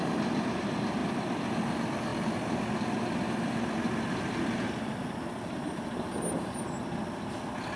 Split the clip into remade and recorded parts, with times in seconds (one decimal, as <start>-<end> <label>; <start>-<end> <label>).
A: 0.0-7.8 recorded